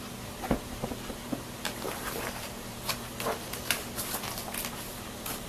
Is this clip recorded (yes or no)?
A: no